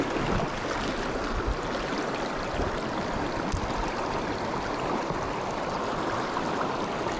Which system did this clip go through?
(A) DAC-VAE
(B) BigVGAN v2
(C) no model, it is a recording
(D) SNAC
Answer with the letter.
C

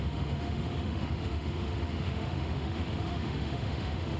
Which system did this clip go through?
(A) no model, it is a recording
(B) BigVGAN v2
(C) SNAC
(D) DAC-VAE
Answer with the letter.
D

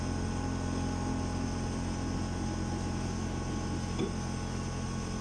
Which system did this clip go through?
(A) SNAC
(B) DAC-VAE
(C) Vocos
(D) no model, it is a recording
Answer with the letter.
D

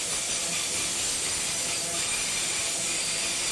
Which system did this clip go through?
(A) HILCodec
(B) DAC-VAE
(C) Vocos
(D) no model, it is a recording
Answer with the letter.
D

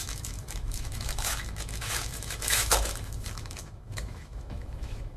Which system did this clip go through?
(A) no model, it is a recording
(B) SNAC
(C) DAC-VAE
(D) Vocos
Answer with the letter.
C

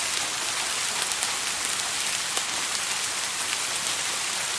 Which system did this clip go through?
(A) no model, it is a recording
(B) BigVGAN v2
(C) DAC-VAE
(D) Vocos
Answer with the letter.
A